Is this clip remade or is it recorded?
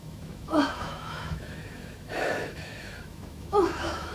remade